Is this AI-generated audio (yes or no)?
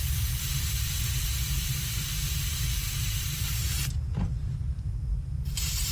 yes